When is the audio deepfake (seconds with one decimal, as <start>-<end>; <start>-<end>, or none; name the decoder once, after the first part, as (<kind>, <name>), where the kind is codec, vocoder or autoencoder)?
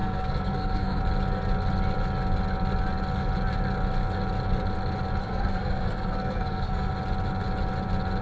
0.0-1.0 (codec, SNAC); 5.2-6.9